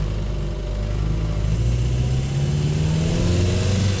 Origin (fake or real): real